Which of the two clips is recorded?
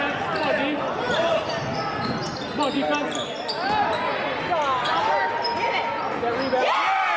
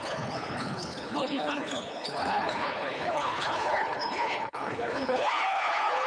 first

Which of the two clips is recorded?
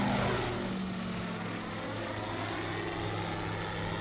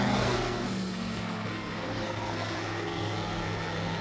first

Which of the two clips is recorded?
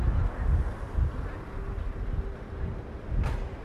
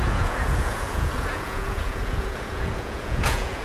first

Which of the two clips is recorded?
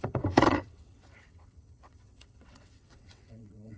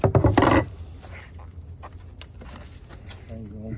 second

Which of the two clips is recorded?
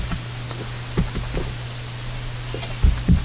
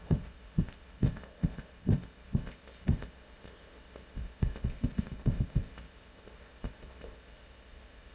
first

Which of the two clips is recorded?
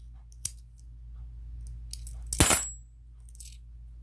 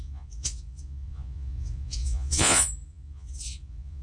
first